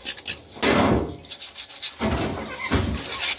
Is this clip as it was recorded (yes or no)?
yes